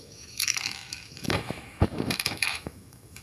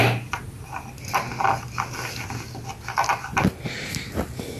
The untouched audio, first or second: second